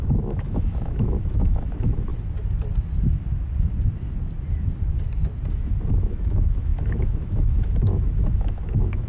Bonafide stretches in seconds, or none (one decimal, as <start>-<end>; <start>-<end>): 2.1-5.9